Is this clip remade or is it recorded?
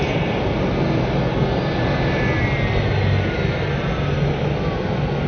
recorded